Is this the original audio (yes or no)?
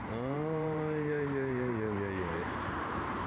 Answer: no